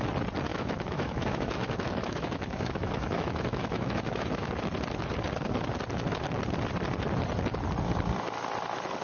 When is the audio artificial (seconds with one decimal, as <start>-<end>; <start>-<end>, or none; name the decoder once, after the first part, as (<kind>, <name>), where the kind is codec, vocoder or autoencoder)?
0.5-4.5 (autoencoder, DAC-VAE)